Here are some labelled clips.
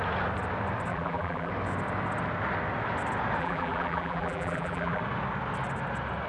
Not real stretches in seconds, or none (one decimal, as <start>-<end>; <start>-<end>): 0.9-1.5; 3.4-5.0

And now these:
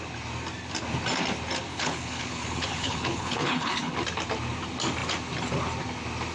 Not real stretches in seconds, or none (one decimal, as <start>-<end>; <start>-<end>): 1.7-3.9

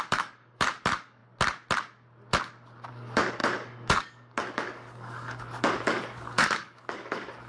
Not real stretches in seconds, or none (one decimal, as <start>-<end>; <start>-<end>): 0.0-1.2; 2.9-7.5

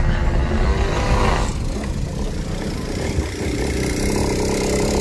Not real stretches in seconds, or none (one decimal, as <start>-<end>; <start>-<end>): none

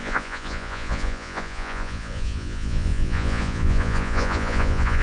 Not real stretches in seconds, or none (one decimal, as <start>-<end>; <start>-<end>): 0.0-5.0

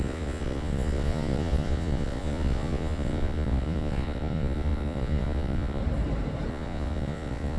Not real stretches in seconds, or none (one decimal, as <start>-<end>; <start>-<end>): 0.0-5.8; 6.5-7.6